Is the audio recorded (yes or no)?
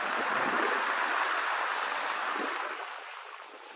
yes